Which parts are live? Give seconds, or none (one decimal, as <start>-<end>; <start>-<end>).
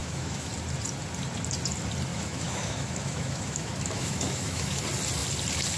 0.5-2.1; 4.8-5.8